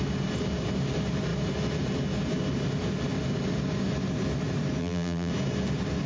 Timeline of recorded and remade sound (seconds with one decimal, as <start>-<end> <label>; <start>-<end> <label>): 0.0-4.8 recorded; 4.8-5.3 remade; 5.3-6.1 recorded